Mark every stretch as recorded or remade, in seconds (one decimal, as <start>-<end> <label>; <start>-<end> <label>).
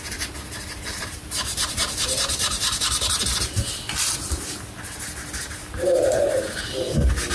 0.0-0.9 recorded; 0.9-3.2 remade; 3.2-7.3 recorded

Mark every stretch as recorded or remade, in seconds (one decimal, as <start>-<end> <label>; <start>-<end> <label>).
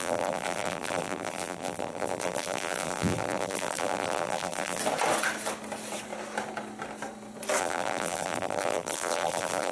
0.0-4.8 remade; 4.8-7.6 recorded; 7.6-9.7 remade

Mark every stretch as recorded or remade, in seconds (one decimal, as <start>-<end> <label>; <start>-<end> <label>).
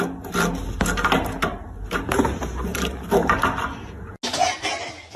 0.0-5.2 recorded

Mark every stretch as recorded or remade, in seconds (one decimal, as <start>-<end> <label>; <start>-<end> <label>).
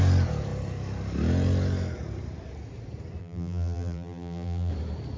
0.0-3.2 recorded; 3.2-4.7 remade; 4.7-5.2 recorded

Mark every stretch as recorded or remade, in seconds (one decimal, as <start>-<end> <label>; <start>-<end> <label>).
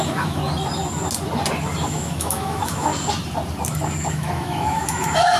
0.0-0.4 remade; 0.4-1.9 recorded; 1.9-2.9 remade; 2.9-4.1 recorded; 4.1-5.4 remade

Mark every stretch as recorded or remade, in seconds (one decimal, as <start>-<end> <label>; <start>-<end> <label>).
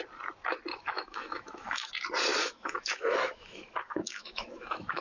0.0-0.7 recorded; 0.7-1.9 remade; 1.9-2.3 recorded; 2.3-5.0 remade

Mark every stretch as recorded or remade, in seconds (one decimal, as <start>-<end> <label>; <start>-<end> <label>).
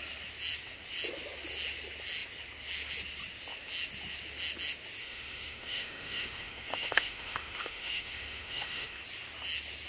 0.0-5.0 recorded; 5.0-9.0 remade; 9.0-9.9 recorded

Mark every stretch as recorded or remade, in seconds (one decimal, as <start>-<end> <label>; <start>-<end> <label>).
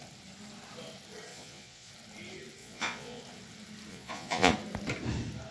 0.0-1.3 recorded; 1.3-1.9 remade; 1.9-2.6 recorded; 2.6-3.2 remade; 3.2-3.9 recorded; 3.9-4.5 remade; 4.5-5.5 recorded